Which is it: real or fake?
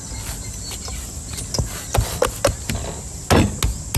real